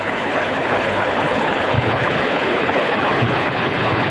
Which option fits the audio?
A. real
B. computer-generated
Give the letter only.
B